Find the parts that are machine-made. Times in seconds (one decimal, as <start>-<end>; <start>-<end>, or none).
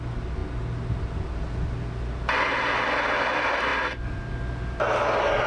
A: none